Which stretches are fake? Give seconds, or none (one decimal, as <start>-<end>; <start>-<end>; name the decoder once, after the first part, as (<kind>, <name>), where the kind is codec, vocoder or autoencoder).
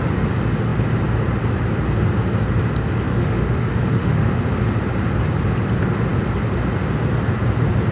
3.1-4.4 (autoencoder, DAC-VAE)